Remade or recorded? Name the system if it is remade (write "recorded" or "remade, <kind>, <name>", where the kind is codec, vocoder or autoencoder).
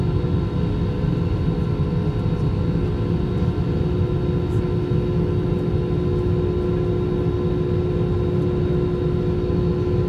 recorded